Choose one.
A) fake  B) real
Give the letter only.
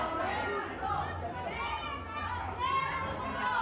B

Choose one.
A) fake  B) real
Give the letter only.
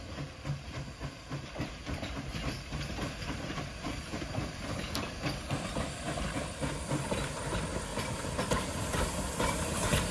A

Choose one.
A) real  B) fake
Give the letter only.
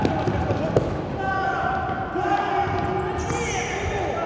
A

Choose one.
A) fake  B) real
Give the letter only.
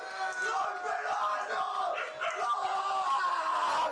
B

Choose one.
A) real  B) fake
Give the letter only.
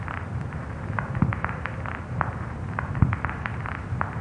B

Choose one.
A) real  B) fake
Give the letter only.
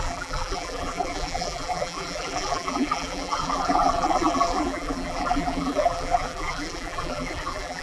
B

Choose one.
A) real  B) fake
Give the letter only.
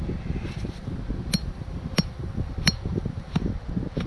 A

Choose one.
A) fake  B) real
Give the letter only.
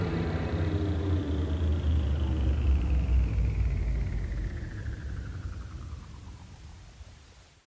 A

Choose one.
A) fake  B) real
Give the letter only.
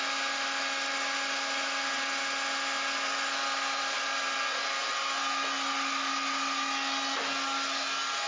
B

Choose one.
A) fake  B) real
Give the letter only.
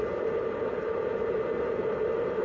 B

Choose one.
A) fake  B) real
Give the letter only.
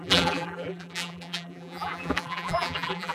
A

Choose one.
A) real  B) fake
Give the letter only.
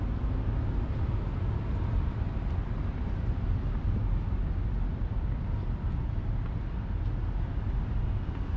A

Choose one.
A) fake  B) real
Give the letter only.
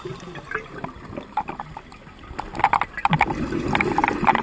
B